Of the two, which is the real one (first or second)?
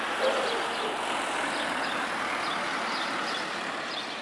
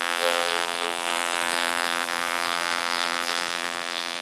first